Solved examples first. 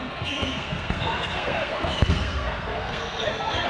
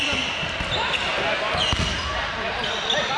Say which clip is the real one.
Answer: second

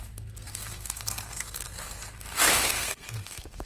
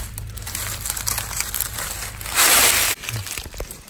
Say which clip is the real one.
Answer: second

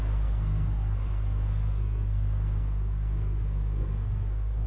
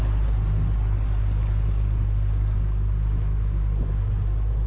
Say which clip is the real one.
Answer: second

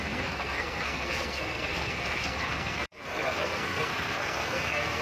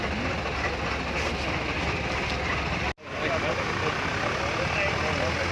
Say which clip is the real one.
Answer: second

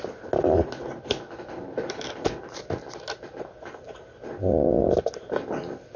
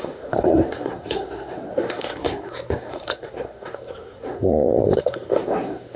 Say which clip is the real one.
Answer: first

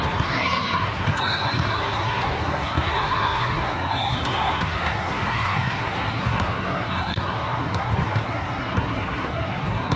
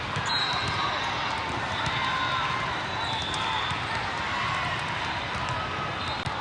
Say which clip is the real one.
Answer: second